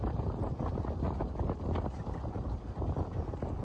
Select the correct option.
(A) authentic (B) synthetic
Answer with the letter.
A